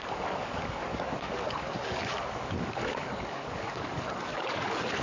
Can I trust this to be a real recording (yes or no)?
no